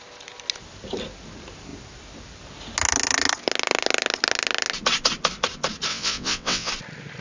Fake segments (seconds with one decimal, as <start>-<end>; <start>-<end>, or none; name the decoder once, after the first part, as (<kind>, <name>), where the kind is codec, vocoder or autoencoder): 5.9-6.7 (vocoder, WaveNeXt)